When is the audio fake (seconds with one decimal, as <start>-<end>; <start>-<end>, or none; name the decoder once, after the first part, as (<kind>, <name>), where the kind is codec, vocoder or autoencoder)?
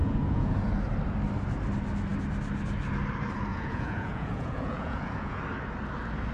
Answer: 0.0-0.7 (vocoder, Vocos); 3.5-5.4